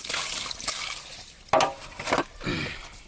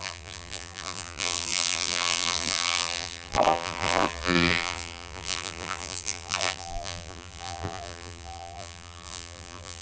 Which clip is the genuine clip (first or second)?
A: first